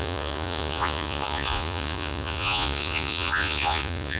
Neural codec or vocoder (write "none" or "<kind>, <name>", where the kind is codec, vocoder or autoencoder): vocoder, Vocos